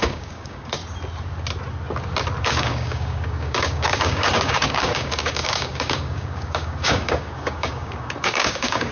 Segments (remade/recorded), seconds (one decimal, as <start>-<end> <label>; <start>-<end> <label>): 0.0-0.8 remade; 0.8-2.4 recorded; 2.4-8.9 remade